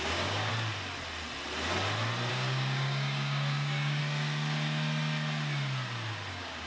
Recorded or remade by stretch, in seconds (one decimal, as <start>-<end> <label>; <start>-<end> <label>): 0.0-0.5 remade; 0.5-2.3 recorded; 2.3-4.0 remade; 4.0-6.3 recorded; 6.3-6.7 remade